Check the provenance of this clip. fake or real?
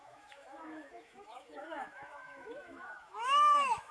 fake